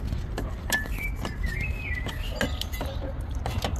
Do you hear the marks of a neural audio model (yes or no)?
no